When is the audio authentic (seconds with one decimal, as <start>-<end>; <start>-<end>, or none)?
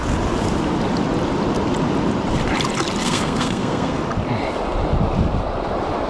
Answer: 0.0-3.0; 4.0-6.1